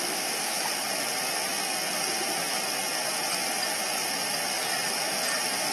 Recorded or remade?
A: recorded